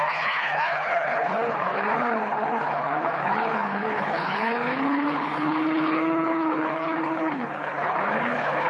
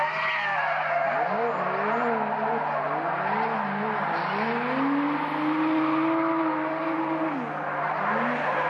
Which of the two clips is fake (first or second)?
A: first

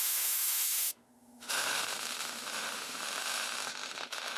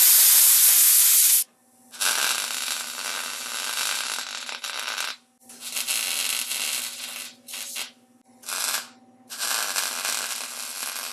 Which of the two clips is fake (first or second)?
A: first